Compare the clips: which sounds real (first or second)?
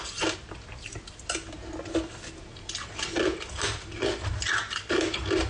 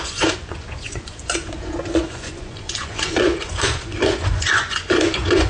first